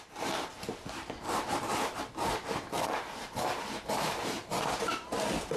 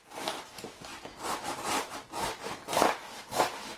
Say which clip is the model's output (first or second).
first